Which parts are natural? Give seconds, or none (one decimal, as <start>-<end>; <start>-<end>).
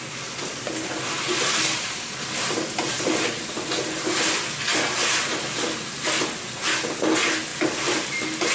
0.0-8.5